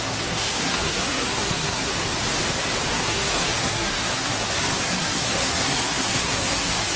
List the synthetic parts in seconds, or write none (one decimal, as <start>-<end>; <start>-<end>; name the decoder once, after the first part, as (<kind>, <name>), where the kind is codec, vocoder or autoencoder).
0.0-1.9 (codec, SNAC); 2.9-7.0